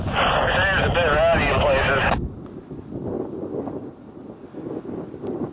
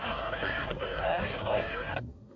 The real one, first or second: first